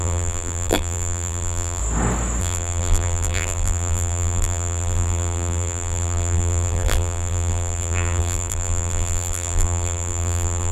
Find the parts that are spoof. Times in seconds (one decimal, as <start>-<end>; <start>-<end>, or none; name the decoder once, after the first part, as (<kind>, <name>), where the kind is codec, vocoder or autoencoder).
0.0-1.8 (vocoder, BigVGAN v2); 2.4-10.7